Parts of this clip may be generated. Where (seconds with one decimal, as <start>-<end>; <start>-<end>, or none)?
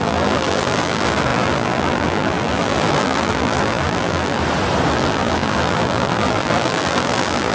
0.0-4.4; 4.9-7.5